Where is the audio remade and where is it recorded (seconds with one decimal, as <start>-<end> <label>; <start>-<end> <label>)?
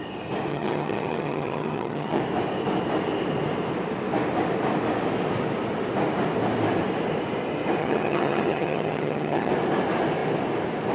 0.0-0.5 recorded; 0.5-2.2 remade; 2.2-7.8 recorded; 7.8-9.5 remade; 9.5-10.9 recorded